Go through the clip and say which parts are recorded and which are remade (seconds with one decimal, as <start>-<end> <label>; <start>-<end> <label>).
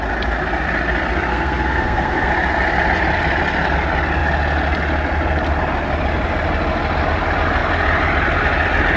0.0-1.3 recorded; 1.3-2.3 remade; 2.3-9.0 recorded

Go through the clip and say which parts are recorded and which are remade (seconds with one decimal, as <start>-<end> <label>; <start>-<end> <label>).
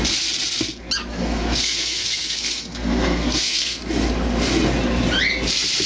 0.0-1.1 recorded; 1.1-3.8 remade; 3.8-5.9 recorded